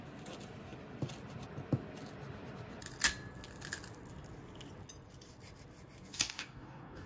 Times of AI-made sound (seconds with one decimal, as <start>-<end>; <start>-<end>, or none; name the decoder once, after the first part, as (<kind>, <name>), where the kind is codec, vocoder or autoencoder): 6.1-7.1 (codec, DAC)